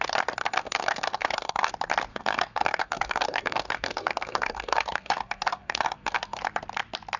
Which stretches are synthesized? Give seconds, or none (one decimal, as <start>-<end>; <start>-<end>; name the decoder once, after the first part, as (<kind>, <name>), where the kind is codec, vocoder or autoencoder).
0.4-1.7 (codec, SNAC); 2.1-6.4